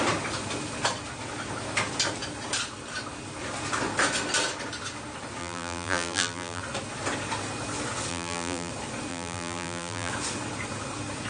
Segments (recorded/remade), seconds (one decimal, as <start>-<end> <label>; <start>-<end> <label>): 0.0-5.4 recorded; 5.4-6.6 remade; 6.6-8.1 recorded; 8.1-8.7 remade; 8.7-9.1 recorded; 9.1-10.1 remade; 10.1-11.3 recorded

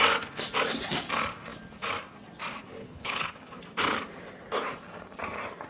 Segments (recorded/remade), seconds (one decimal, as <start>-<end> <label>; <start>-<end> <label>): 0.0-2.8 recorded; 2.8-3.6 remade; 3.6-5.7 recorded